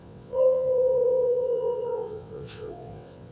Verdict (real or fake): fake